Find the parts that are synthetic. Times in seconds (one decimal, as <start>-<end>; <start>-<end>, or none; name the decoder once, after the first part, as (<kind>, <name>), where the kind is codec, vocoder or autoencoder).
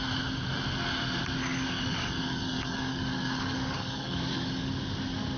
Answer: 1.5-4.7 (codec, DAC)